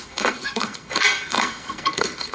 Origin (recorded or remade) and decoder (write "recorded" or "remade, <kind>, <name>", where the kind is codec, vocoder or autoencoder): remade, codec, SNAC